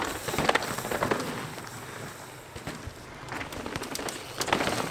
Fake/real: real